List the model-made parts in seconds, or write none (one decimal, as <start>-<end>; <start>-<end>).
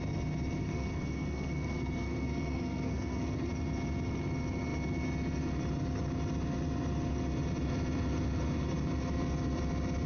0.6-3.5